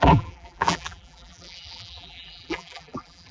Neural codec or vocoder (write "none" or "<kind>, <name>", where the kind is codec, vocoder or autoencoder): vocoder, BigVGAN v2